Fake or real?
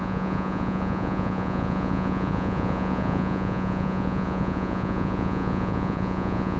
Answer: fake